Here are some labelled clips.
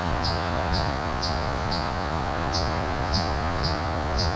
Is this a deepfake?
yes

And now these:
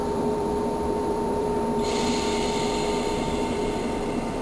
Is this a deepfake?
yes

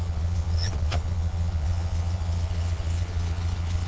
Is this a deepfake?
yes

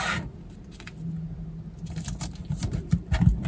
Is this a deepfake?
no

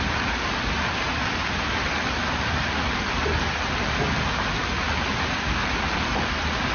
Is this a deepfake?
no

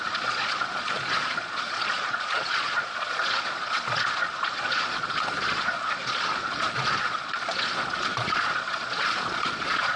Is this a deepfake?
yes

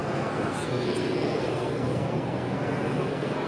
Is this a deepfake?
yes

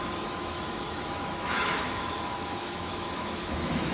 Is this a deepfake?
yes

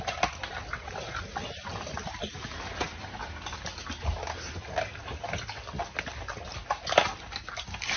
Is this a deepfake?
no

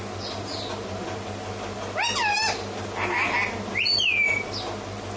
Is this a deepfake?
no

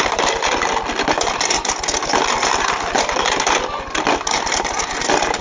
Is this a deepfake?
no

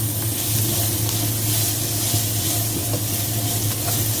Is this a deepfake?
no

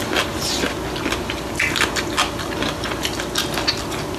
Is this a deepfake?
no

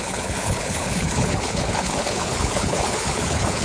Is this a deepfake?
yes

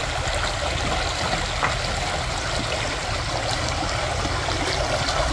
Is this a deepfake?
no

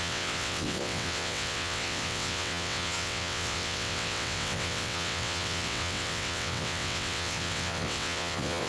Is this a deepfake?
yes